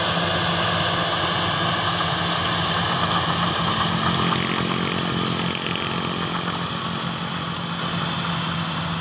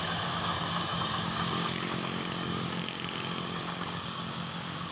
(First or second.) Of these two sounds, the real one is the first